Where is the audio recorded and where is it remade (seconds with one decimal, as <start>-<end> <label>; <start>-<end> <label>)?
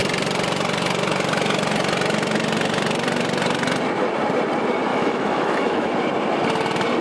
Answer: 0.0-4.9 recorded; 4.9-5.9 remade; 5.9-7.0 recorded